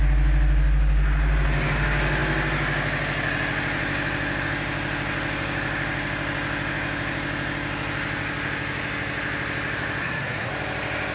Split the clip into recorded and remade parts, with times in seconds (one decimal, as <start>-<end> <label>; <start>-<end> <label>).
0.0-10.0 recorded; 10.0-10.5 remade; 10.5-11.1 recorded